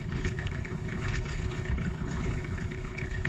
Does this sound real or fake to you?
fake